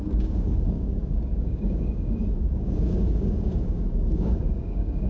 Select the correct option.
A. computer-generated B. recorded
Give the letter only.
A